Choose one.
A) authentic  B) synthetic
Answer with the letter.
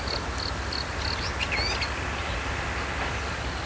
A